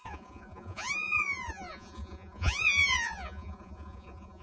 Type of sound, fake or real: fake